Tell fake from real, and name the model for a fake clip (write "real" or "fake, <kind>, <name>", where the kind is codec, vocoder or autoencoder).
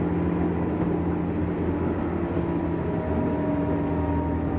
real